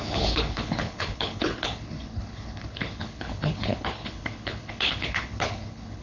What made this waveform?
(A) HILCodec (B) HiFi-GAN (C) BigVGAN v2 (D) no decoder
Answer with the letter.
A